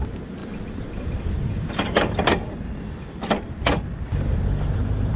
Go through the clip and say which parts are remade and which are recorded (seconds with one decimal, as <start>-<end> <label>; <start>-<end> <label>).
0.0-5.2 recorded